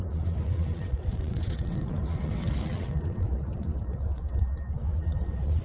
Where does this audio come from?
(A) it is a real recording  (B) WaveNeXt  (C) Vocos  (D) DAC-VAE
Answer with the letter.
B